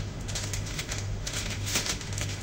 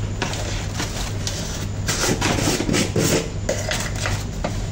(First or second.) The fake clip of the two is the first